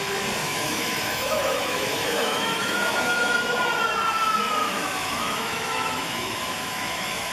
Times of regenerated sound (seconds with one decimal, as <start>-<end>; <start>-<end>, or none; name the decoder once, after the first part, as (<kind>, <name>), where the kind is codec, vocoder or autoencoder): 0.4-3.3 (autoencoder, DAC-VAE); 4.6-7.3